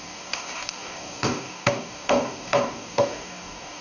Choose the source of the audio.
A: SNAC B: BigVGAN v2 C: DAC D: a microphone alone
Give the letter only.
C